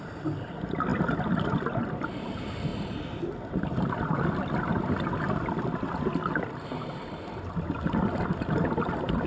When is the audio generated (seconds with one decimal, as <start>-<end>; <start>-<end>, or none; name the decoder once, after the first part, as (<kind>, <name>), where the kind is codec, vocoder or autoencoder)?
none